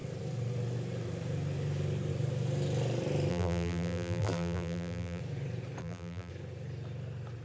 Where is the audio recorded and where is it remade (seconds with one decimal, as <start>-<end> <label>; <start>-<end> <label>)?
0.0-3.3 recorded; 3.3-5.2 remade; 5.2-5.8 recorded; 5.8-6.3 remade; 6.3-7.4 recorded